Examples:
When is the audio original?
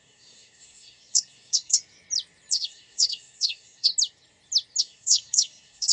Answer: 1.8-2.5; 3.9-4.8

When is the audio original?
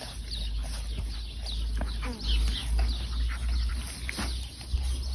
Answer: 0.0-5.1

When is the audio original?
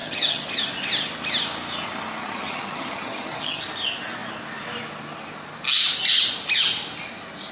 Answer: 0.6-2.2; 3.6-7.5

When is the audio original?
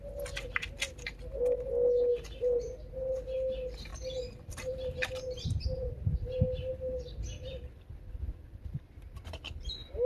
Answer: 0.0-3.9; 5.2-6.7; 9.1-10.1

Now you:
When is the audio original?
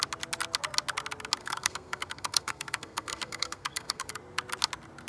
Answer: 0.0-1.4; 4.1-5.1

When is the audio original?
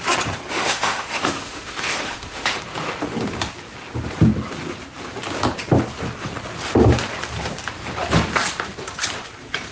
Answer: 0.0-0.5; 2.6-9.7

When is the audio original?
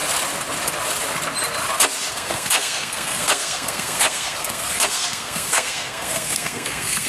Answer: 0.0-2.1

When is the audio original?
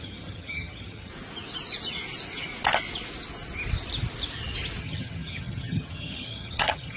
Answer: 1.1-4.8